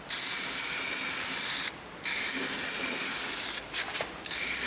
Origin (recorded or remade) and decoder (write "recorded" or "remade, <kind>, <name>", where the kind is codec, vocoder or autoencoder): recorded